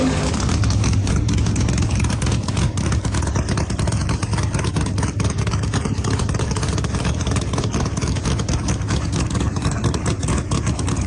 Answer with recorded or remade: remade